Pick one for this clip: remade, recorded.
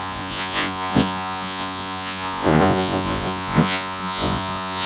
remade